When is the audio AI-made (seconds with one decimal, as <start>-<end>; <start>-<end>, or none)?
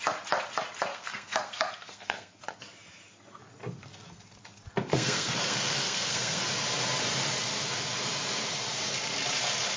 0.9-2.4; 4.9-6.4